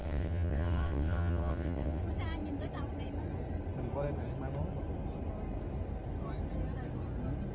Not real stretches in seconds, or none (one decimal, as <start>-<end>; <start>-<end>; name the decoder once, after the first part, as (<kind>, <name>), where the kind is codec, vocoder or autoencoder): 0.0-2.0 (vocoder, WaveNeXt)

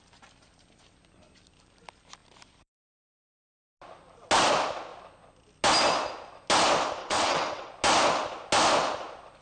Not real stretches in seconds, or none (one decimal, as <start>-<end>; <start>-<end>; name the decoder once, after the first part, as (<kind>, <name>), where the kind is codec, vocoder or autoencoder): 7.0-7.7 (vocoder, WaveNeXt)